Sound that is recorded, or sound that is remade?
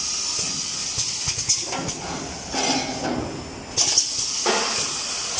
recorded